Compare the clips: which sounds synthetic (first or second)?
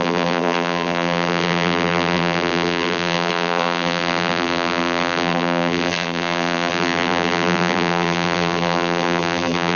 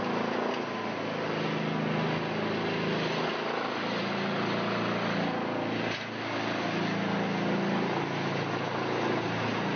first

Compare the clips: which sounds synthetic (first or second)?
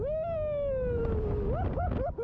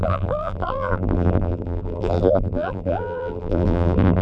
second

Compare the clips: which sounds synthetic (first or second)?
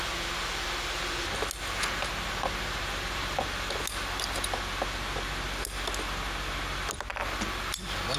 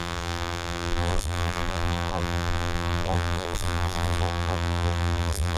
second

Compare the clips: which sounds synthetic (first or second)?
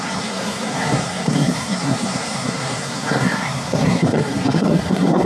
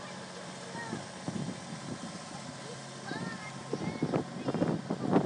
first